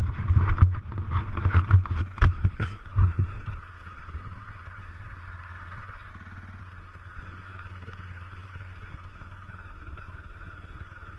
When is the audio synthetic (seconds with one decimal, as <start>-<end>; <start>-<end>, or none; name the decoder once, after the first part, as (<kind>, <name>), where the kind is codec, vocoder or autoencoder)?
2.3-6.1 (codec, SNAC); 6.6-11.2